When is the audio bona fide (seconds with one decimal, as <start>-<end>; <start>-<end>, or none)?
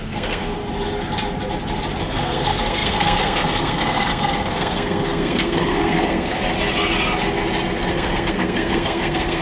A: 0.6-2.0; 6.4-7.9